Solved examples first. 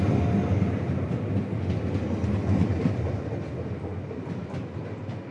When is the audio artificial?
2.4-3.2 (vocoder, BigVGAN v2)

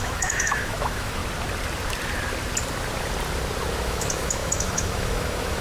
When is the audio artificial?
0.0-1.2 (autoencoder, DAC-VAE); 3.7-5.6

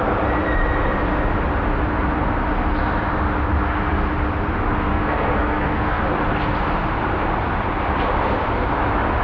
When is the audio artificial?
4.9-6.0 (codec, SNAC)

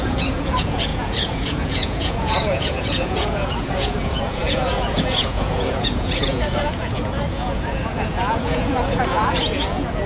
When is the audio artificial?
0.0-10.1 (vocoder, Vocos)

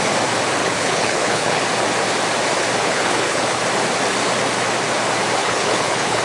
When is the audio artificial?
0.6-1.6 (codec, HILCodec); 2.8-3.6; 5.4-6.2

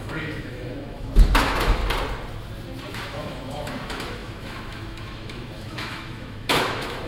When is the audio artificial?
0.0-1.8 (autoencoder, DAC-VAE); 2.9-7.1